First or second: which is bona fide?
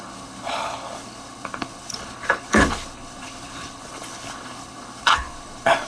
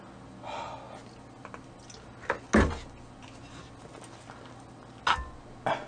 second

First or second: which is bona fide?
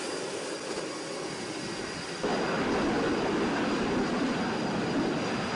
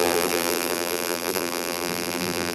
first